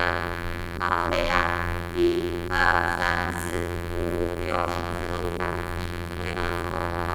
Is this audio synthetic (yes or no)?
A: yes